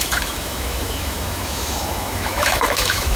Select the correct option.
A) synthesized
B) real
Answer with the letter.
A